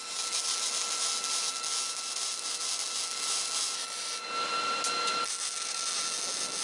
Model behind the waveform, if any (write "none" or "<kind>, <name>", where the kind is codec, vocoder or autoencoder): none